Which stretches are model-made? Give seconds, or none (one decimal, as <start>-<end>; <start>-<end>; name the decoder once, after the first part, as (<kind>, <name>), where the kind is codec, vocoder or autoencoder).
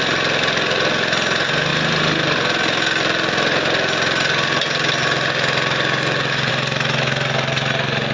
none